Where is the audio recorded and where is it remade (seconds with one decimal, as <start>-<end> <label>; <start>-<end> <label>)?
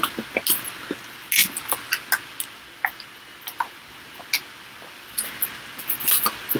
0.0-6.6 recorded